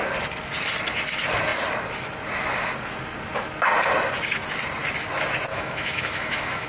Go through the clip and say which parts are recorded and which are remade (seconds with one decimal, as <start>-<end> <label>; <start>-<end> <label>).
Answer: 0.0-5.5 recorded; 5.5-6.7 remade